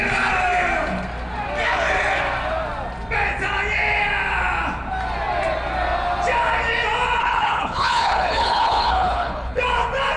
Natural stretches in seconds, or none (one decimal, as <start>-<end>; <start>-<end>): 0.0-7.2; 9.6-10.2

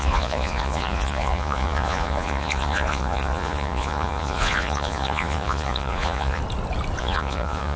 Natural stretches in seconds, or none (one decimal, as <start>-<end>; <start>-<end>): 6.4-7.0

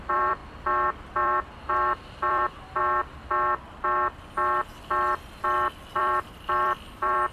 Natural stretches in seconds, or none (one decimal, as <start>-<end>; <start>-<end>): 0.4-1.0; 2.8-5.9

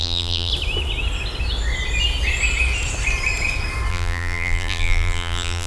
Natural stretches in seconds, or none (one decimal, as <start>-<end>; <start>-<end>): 0.5-3.9